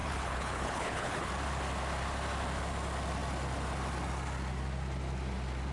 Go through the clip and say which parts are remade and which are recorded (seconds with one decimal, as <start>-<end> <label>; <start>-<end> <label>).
0.0-1.3 remade; 1.3-5.7 recorded